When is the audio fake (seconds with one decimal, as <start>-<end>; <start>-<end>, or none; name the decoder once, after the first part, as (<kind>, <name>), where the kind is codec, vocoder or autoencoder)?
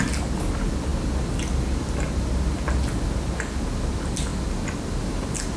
none